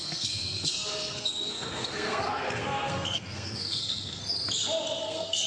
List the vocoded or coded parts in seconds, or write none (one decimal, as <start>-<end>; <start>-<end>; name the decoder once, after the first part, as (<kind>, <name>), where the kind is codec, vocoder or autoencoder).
0.0-4.2 (codec, SNAC); 5.0-5.5